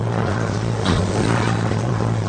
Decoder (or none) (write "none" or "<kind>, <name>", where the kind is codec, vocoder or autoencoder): vocoder, Vocos